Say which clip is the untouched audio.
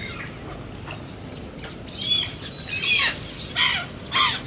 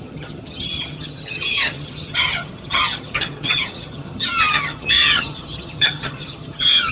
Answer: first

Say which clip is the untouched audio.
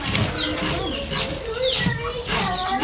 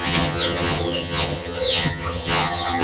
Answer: first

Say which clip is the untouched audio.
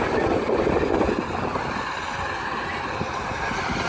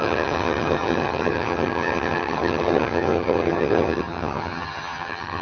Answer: first